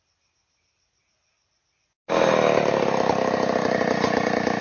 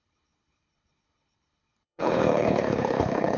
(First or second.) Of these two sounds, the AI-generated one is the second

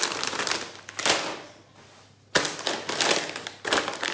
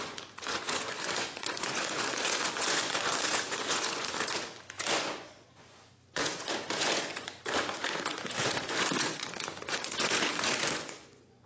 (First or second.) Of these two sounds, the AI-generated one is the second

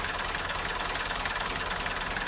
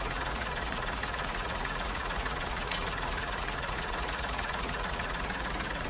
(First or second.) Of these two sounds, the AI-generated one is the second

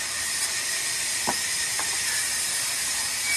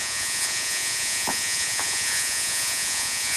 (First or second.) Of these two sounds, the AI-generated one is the second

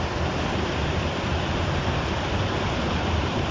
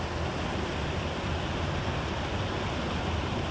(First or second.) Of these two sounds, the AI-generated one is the first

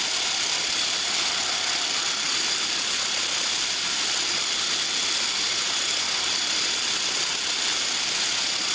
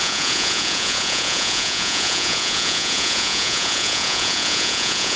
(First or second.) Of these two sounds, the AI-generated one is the second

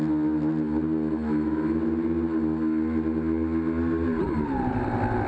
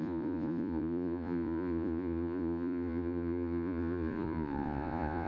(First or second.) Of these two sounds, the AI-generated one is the second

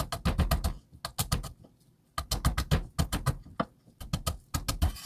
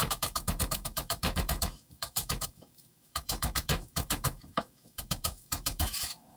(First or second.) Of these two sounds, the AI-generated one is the second